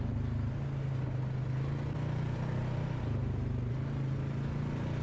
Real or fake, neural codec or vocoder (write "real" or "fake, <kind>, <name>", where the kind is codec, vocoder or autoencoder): real